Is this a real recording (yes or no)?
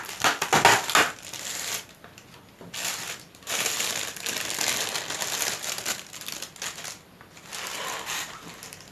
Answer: yes